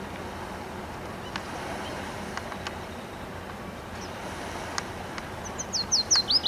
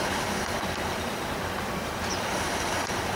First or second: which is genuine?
first